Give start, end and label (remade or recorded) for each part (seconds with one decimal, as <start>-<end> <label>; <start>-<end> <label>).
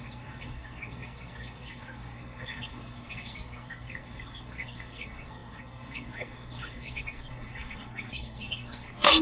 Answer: 0.0-9.2 remade